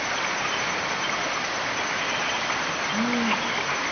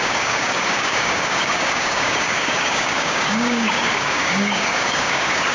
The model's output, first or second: second